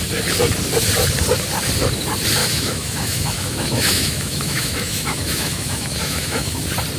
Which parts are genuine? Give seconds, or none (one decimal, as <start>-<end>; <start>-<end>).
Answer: 0.0-2.4; 6.6-7.0